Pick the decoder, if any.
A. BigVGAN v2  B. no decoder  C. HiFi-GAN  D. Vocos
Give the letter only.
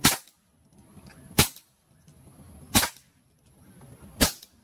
B